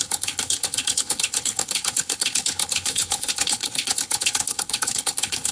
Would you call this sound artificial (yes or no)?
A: yes